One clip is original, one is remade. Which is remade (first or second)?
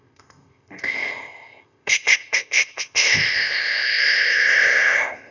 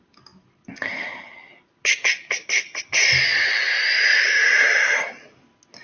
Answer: first